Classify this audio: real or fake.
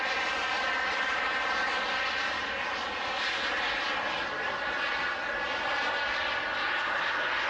real